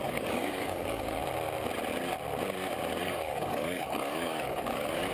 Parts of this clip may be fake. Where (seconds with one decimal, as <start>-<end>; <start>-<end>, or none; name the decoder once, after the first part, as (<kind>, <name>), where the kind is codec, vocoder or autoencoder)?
0.0-1.2 (codec, DAC); 3.0-5.1

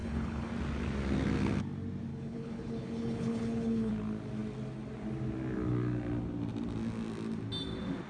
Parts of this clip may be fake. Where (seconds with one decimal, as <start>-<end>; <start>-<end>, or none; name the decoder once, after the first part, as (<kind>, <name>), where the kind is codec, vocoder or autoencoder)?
0.0-0.5 (codec, HILCodec); 2.1-3.9

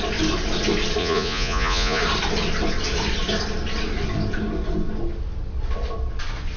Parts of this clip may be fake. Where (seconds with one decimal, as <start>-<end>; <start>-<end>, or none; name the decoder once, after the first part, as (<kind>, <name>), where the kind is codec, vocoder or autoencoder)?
1.0-2.0 (vocoder, Vocos)

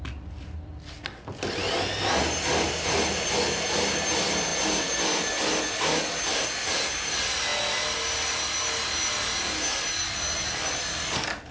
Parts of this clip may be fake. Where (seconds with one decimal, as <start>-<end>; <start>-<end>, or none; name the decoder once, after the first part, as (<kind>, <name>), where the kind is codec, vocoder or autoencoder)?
none

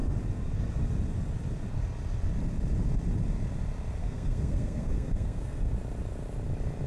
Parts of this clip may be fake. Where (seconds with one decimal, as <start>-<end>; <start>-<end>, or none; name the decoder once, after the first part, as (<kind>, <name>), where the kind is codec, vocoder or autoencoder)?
4.0-5.7 (codec, SNAC)

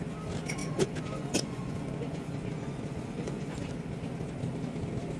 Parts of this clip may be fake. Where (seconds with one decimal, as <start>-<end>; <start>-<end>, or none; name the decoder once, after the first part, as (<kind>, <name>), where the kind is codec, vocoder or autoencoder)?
0.6-3.7 (vocoder, Vocos)

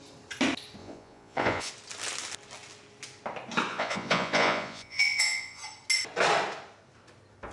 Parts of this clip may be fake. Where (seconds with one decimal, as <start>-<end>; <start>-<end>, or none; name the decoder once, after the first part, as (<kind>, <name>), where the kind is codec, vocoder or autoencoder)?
0.8-1.7 (vocoder, Vocos); 3.7-5.6